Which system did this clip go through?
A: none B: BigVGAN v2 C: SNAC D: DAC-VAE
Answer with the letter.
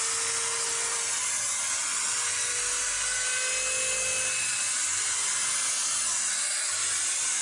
A